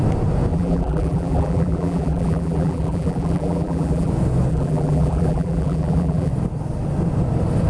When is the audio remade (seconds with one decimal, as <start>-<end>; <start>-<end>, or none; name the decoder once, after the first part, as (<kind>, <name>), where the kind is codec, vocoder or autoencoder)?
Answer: 0.5-4.1 (vocoder, BigVGAN v2); 4.5-6.3

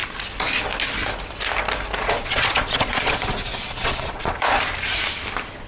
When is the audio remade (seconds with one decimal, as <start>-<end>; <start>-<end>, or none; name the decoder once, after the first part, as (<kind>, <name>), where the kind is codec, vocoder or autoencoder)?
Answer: 2.0-4.6 (vocoder, Vocos)

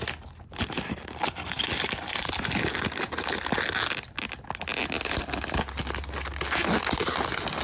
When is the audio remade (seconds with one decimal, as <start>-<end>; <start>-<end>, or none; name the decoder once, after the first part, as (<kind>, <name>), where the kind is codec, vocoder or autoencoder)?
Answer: 0.5-1.1 (vocoder, BigVGAN v2)